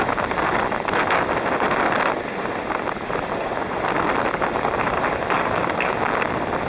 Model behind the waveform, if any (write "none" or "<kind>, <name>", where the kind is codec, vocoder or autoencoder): none